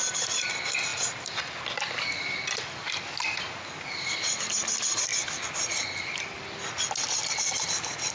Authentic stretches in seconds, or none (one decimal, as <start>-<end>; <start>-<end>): 0.0-8.1